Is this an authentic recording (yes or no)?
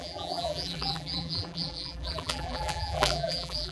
no